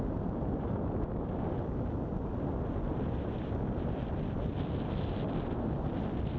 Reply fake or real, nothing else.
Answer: real